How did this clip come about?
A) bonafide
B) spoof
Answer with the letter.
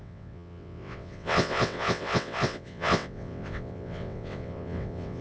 B